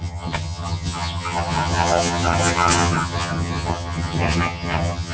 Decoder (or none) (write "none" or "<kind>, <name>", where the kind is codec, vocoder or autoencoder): vocoder, HiFi-GAN